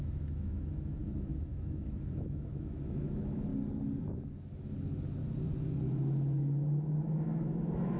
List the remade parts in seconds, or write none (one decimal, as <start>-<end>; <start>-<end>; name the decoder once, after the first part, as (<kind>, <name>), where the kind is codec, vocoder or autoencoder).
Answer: 0.0-3.5 (autoencoder, DAC-VAE); 7.2-8.0